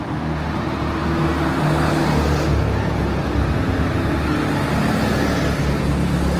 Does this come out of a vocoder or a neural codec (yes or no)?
no